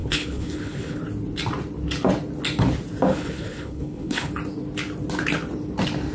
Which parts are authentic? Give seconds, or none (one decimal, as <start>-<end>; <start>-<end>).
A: 1.0-3.1; 4.3-6.1